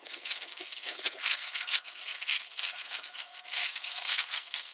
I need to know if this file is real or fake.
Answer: fake